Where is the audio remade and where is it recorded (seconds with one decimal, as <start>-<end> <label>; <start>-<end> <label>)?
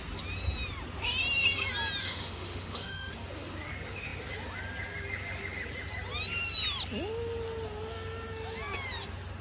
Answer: 0.0-2.0 recorded; 2.0-3.1 remade; 3.1-9.4 recorded